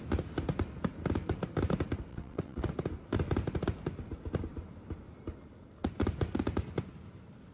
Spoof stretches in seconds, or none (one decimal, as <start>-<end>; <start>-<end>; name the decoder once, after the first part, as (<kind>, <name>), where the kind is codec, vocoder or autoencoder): 2.1-2.7 (vocoder, WaveNeXt)